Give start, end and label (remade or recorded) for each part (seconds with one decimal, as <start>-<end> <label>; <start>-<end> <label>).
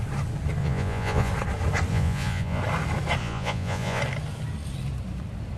0.0-0.6 recorded; 0.6-1.3 remade; 1.3-1.9 recorded; 1.9-2.6 remade; 2.6-3.2 recorded; 3.2-4.0 remade; 4.0-5.6 recorded